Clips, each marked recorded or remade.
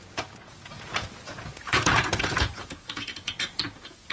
remade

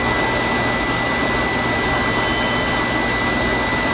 recorded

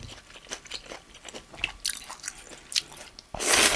recorded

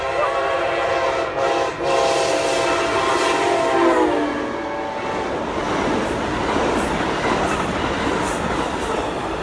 recorded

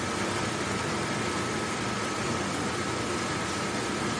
recorded